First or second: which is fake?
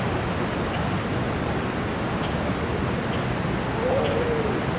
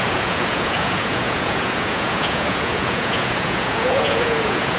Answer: second